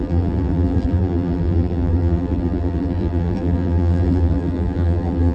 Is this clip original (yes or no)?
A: no